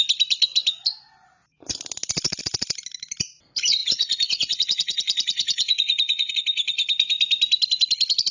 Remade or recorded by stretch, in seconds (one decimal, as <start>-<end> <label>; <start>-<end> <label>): 0.0-3.8 recorded; 3.8-6.3 remade; 6.3-8.3 recorded